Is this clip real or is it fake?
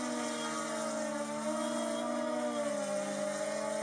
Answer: real